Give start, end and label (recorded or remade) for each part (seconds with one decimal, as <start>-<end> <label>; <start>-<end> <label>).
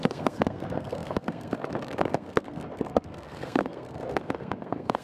0.0-5.0 remade